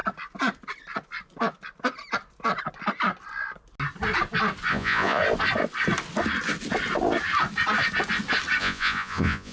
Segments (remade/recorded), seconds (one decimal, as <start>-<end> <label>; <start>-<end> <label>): 0.0-4.7 recorded; 4.7-5.2 remade; 5.2-8.6 recorded; 8.6-9.5 remade